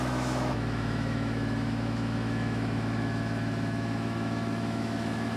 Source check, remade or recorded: remade